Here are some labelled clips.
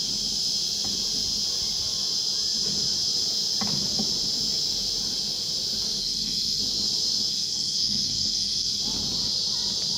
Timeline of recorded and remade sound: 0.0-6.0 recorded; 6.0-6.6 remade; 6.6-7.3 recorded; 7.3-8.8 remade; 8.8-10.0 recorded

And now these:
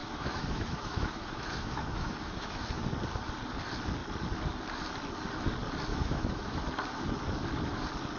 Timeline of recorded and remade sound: 0.0-2.8 remade; 2.8-5.9 recorded; 5.9-6.6 remade; 6.6-8.2 recorded

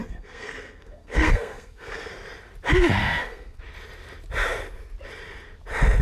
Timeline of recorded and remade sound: 0.0-2.1 remade; 2.1-3.0 recorded; 3.0-3.6 remade; 3.6-6.0 recorded